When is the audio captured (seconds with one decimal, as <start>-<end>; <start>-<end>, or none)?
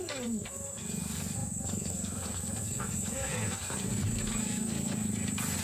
5.1-5.6